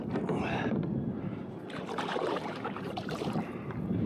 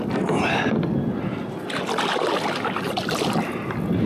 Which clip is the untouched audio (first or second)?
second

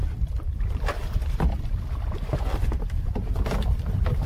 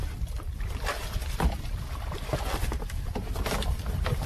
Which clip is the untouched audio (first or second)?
second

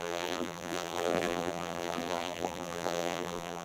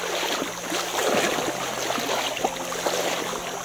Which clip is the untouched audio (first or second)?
second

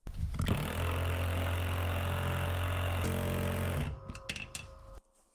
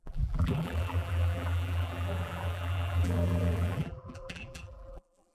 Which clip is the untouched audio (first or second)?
first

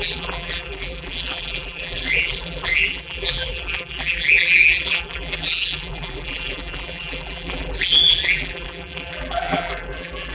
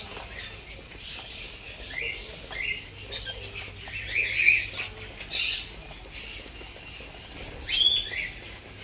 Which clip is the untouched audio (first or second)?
second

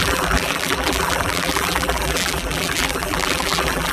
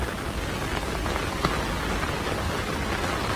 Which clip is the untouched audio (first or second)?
second